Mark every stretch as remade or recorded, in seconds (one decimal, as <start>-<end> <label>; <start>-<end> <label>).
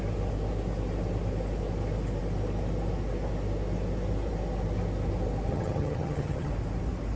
0.0-5.5 recorded; 5.5-6.5 remade; 6.5-7.2 recorded